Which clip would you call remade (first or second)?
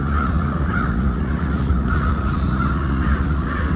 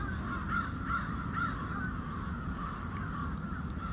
first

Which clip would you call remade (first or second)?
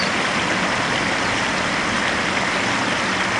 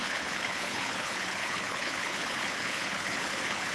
second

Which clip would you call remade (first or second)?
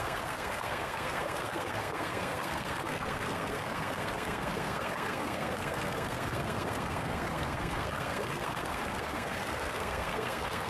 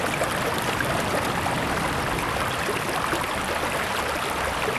first